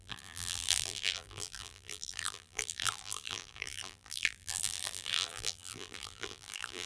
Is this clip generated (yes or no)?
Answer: yes